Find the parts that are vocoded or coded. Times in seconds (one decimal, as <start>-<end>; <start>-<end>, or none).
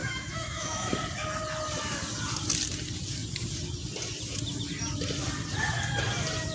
0.0-0.9